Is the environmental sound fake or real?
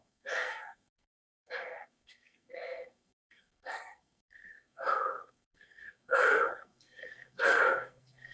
fake